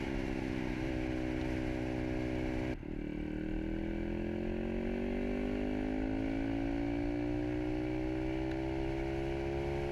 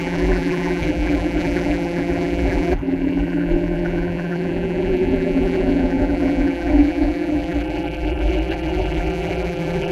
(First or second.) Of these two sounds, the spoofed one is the second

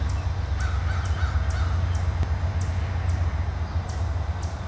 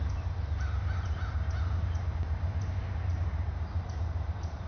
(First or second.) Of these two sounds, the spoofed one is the second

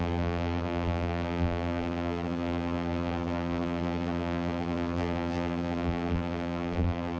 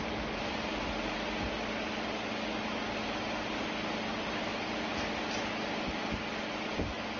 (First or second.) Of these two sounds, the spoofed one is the first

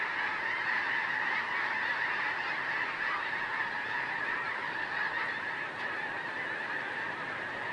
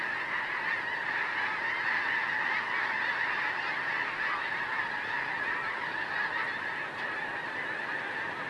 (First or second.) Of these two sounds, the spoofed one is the first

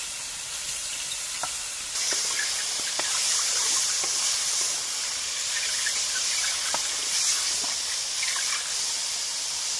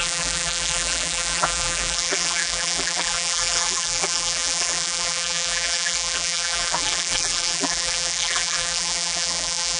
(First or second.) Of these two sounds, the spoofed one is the second